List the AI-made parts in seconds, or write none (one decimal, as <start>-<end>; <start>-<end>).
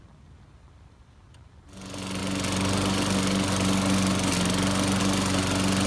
none